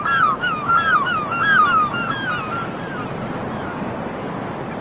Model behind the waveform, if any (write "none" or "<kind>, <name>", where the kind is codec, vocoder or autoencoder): none